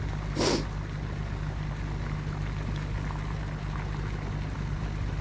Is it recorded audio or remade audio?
recorded